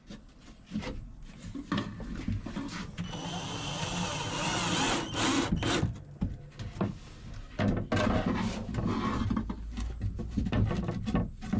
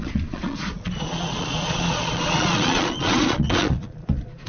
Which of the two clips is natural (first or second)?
first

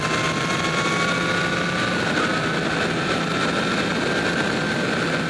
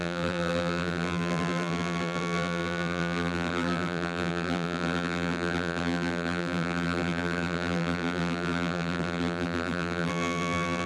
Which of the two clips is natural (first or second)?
first